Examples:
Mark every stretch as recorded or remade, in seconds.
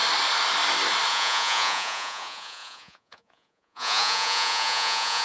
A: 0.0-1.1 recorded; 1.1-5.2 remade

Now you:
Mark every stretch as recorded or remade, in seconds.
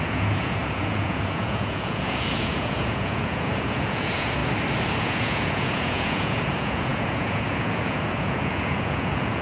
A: 0.0-4.4 remade; 4.4-5.0 recorded; 5.0-9.4 remade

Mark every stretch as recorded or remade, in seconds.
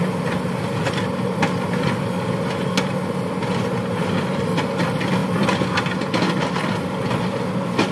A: 0.0-7.9 recorded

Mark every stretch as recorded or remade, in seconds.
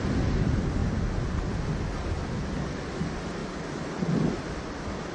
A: 0.0-5.1 recorded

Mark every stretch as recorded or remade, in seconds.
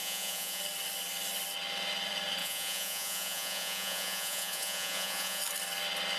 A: 0.0-0.6 remade; 0.6-2.4 recorded; 2.4-5.4 remade; 5.4-6.2 recorded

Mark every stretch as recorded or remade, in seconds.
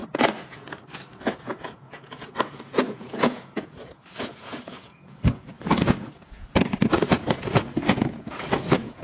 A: 0.0-9.0 remade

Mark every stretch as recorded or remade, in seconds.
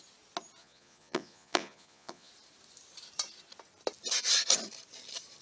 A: 0.0-0.6 recorded; 0.6-2.3 remade; 2.3-5.4 recorded